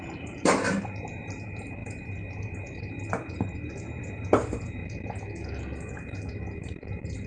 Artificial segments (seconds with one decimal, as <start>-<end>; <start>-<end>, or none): 0.0-4.8; 6.6-7.3